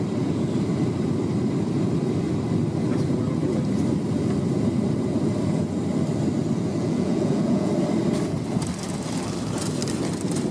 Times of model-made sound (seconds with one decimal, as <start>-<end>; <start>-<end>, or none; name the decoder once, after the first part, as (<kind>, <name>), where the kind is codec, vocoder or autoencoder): 6.8-7.7 (vocoder, Vocos)